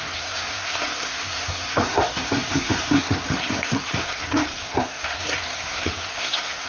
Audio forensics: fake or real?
fake